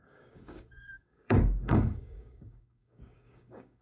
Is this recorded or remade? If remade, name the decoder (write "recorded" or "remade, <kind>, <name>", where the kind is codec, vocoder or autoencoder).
remade, codec, DAC